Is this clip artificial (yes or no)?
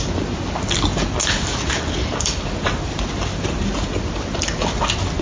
no